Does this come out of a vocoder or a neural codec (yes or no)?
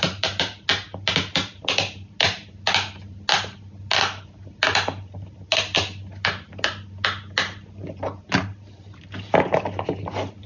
no